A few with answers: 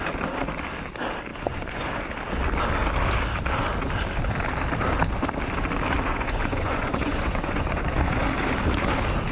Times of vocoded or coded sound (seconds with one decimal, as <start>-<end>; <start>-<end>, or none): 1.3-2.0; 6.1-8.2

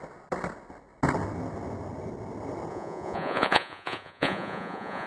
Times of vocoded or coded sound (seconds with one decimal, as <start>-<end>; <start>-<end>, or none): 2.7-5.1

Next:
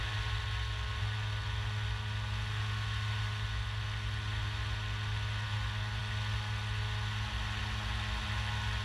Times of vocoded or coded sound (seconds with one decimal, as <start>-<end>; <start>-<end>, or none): none